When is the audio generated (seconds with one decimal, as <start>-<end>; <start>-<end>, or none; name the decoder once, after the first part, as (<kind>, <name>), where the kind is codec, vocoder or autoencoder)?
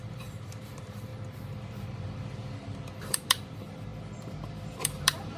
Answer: 0.0-1.1 (vocoder, BigVGAN v2); 3.0-3.9; 4.7-5.4